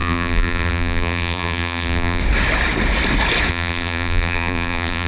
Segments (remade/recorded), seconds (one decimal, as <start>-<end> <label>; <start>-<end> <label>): 0.0-2.2 remade; 2.2-3.5 recorded; 3.5-5.1 remade